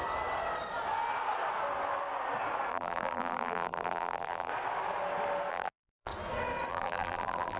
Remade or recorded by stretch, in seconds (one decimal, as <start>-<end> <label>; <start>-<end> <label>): 0.0-2.7 recorded; 2.7-4.5 remade; 4.5-5.5 recorded; 5.5-6.1 remade; 6.1-6.7 recorded; 6.7-7.6 remade